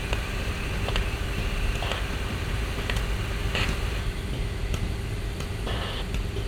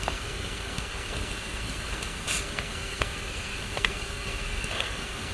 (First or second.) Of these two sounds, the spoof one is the second